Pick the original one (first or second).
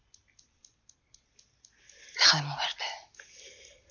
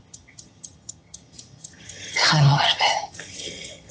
first